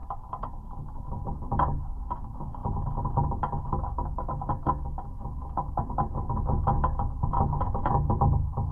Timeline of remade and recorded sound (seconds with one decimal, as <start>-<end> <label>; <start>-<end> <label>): 0.0-1.2 recorded; 1.2-2.6 remade; 2.6-3.6 recorded; 3.6-8.7 remade